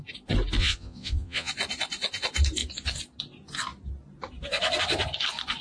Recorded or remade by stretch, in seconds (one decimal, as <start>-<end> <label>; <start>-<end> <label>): 0.0-0.6 recorded; 0.6-1.5 remade; 1.5-5.6 recorded